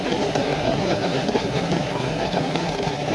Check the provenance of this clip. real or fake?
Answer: fake